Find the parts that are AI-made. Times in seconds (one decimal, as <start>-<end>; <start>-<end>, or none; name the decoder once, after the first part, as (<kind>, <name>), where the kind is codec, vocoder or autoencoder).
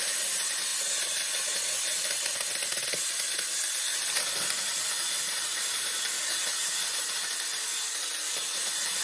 none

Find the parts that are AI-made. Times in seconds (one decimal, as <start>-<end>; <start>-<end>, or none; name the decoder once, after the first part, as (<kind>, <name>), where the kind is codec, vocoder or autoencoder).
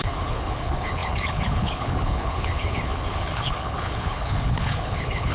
0.0-5.3 (codec, HILCodec)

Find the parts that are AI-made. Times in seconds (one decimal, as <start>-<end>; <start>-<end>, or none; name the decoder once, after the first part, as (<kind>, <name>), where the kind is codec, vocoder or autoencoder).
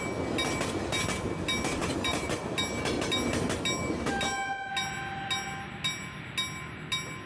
1.8-2.4 (vocoder, BigVGAN v2)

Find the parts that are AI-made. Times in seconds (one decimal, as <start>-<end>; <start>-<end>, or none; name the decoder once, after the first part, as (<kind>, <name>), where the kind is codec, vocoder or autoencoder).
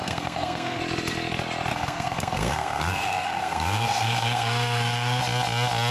0.0-0.8 (codec, SNAC); 1.7-5.2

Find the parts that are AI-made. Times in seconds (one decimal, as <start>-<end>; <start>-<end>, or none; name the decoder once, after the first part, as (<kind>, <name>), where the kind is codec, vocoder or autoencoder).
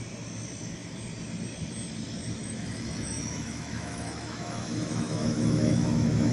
2.4-6.3 (autoencoder, DAC-VAE)